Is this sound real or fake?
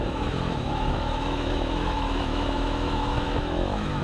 fake